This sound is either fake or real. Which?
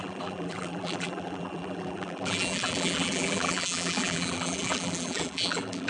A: fake